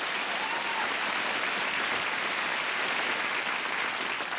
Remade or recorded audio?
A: recorded